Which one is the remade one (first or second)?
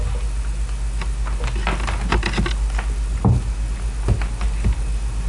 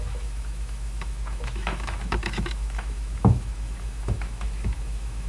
second